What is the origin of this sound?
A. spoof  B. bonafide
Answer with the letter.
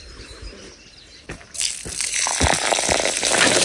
B